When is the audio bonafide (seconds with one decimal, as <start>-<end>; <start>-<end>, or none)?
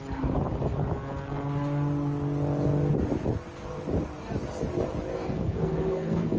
0.0-5.1